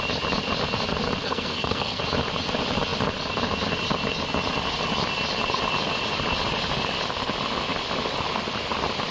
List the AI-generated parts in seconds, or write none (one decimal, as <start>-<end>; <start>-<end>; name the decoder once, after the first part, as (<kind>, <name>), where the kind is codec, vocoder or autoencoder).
1.2-2.0 (codec, SNAC)